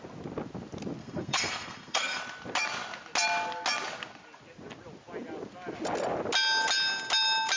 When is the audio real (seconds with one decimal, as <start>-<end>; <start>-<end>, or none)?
0.0-1.0; 2.2-7.6